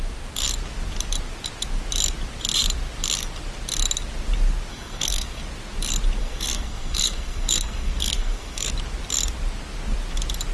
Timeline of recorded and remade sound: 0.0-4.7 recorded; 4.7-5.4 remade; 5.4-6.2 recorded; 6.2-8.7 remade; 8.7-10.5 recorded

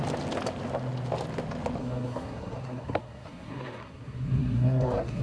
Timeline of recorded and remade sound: 0.0-1.8 recorded; 1.8-5.2 remade

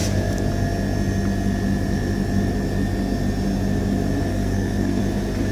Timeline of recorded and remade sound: 0.0-4.3 recorded; 4.3-5.0 remade; 5.0-5.5 recorded

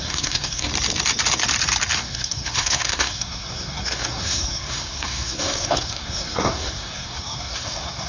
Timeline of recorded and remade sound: 0.0-0.7 remade; 0.7-2.0 recorded; 2.0-8.1 remade

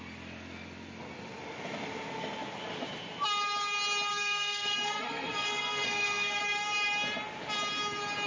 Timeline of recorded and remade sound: 0.0-4.1 recorded; 4.1-6.4 remade; 6.4-8.3 recorded

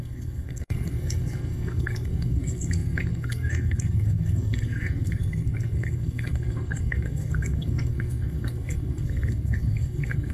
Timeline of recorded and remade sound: 0.0-10.3 remade

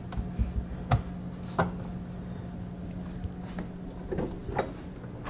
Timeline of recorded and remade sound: 0.0-5.3 recorded